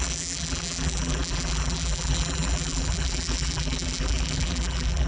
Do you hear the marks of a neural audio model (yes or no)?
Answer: yes